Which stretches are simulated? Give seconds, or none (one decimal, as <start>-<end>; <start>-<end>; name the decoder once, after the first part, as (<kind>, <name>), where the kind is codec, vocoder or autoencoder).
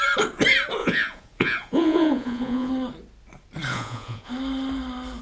0.8-2.7 (vocoder, Vocos); 3.7-4.3